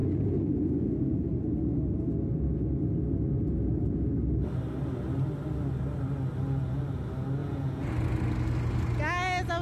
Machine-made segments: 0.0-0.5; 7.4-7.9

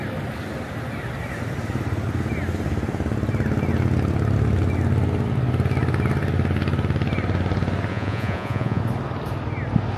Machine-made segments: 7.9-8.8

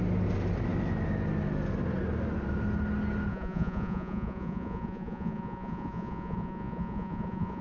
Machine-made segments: 3.3-7.6